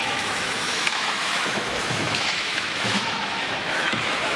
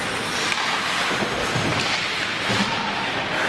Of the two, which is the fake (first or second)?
first